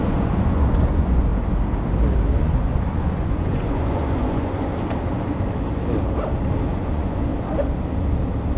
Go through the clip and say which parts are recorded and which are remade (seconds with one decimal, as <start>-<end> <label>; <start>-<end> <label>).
0.0-1.3 remade; 1.3-2.4 recorded; 2.4-4.7 remade; 4.7-6.7 recorded; 6.7-7.3 remade; 7.3-8.6 recorded